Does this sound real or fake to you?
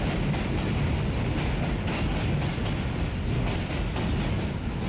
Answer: real